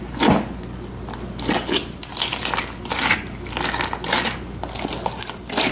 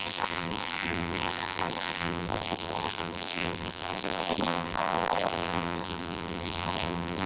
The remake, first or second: second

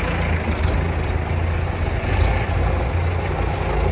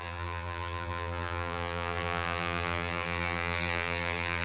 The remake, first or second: second